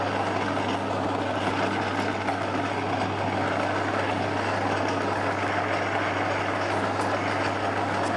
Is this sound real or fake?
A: real